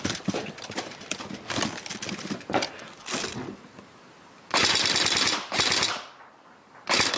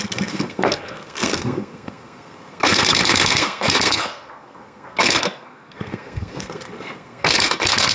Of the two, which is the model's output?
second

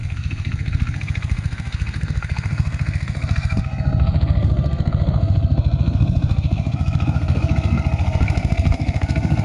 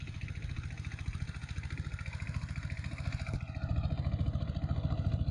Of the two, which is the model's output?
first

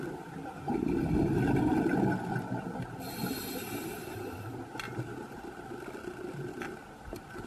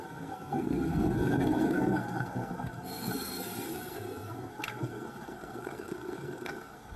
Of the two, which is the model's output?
second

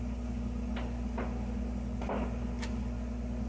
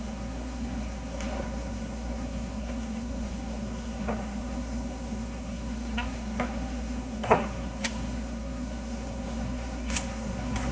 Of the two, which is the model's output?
second